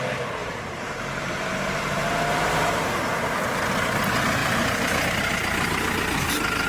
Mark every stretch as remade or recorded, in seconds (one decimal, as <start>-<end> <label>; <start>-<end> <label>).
0.0-0.4 recorded; 0.4-3.7 remade; 3.7-6.7 recorded

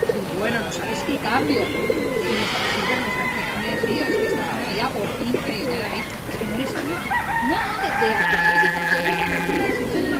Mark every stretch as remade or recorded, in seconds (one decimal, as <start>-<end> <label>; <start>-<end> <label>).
0.0-8.2 recorded; 8.2-9.6 remade; 9.6-10.2 recorded

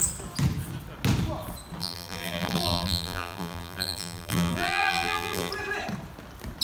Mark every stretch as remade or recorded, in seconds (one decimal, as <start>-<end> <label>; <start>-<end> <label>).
0.0-1.8 recorded; 1.8-5.5 remade; 5.5-6.6 recorded

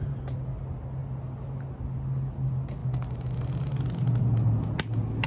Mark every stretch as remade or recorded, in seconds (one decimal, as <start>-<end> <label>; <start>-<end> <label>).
0.0-5.3 recorded

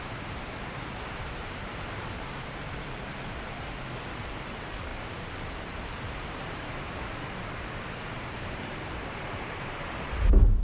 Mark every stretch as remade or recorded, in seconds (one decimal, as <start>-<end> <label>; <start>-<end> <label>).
0.0-10.6 remade